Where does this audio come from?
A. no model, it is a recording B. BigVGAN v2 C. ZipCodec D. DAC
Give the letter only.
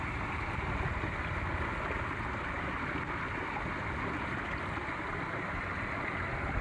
A